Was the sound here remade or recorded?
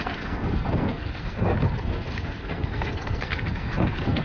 remade